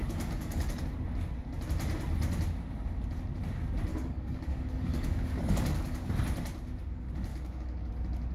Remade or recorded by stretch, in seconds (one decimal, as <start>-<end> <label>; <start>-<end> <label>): 0.0-0.8 remade; 0.8-3.9 recorded; 3.9-6.1 remade; 6.1-7.3 recorded; 7.3-7.9 remade; 7.9-8.3 recorded